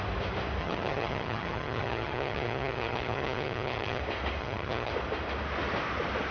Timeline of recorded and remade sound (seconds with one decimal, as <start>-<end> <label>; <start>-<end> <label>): 0.0-0.6 recorded; 0.6-4.0 remade; 4.0-4.4 recorded; 4.4-4.9 remade; 4.9-6.3 recorded